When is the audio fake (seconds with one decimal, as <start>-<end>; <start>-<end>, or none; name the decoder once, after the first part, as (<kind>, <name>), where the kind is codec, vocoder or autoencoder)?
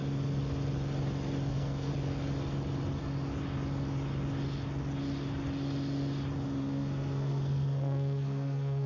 1.5-1.9 (codec, SNAC); 6.6-8.9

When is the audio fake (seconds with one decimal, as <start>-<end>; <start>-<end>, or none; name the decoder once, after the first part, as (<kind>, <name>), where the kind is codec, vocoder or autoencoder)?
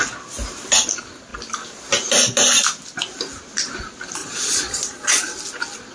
4.2-5.3 (vocoder, Vocos)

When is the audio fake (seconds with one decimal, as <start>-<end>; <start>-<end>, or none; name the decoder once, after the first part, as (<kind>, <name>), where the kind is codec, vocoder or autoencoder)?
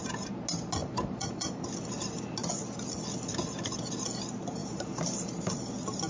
0.8-1.5 (vocoder, BigVGAN v2); 4.6-5.5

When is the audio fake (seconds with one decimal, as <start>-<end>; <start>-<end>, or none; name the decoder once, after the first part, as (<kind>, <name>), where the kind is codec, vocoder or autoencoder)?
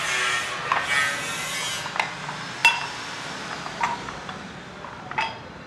2.6-5.7 (vocoder, BigVGAN v2)